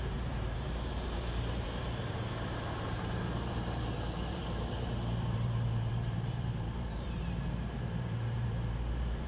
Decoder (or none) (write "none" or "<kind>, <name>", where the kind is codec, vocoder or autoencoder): vocoder, BigVGAN v2